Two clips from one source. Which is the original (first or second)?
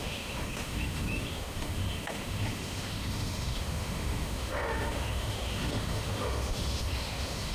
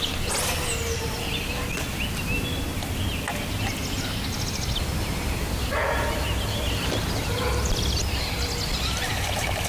second